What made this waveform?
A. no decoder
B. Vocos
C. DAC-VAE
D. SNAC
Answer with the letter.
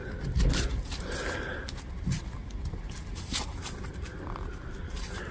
A